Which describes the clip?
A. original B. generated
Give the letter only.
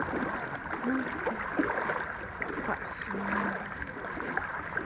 A